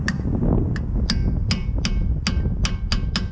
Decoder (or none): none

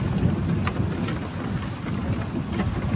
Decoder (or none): none